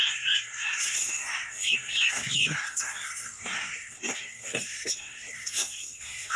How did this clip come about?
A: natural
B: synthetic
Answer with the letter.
B